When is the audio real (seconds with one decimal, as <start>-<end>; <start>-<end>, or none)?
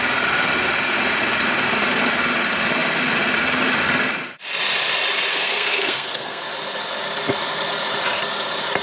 0.0-5.3; 6.4-8.8